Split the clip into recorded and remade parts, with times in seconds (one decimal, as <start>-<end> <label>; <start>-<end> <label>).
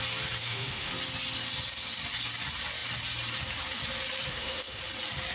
0.0-0.4 recorded; 0.4-0.9 remade; 0.9-4.3 recorded; 4.3-4.8 remade; 4.8-5.3 recorded